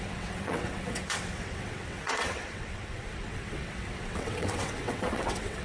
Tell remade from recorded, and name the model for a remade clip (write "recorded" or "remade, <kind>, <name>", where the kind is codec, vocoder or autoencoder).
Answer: remade, vocoder, WaveNeXt